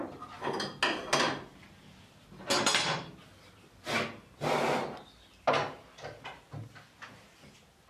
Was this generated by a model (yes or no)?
no